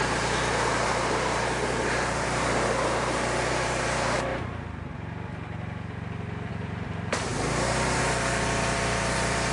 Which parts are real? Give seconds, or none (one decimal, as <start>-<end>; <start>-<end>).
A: 4.3-6.5

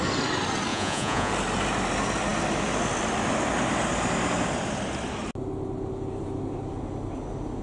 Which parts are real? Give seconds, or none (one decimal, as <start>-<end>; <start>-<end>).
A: 0.0-0.7; 1.3-7.6